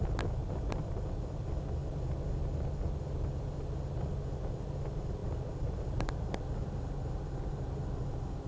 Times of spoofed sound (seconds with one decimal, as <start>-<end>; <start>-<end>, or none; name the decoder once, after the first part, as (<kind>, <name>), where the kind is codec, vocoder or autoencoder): none